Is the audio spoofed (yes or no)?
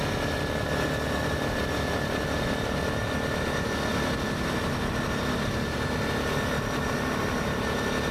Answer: no